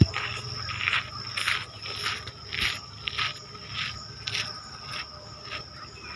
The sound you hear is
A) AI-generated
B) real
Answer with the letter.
B